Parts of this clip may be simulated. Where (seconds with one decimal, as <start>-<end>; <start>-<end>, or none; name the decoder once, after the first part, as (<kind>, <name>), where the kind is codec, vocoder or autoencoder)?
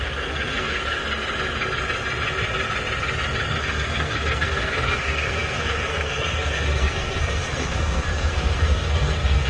0.0-1.0 (codec, SNAC); 3.6-9.5